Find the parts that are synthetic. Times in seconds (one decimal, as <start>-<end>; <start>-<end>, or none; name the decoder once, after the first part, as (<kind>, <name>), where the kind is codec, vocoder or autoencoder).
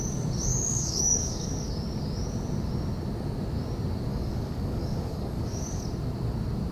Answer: 0.5-1.7 (codec, DAC); 4.1-5.8